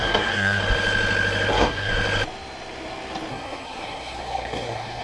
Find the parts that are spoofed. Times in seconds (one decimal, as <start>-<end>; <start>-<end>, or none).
0.0-0.6; 1.5-1.9; 3.3-5.0